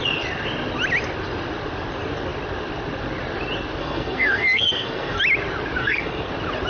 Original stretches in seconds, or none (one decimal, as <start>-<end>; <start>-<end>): 0.0-3.8; 5.2-5.8; 6.3-6.7